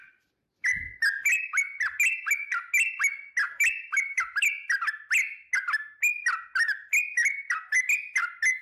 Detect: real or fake real